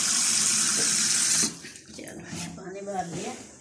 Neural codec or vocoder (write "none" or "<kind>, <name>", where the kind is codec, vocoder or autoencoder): none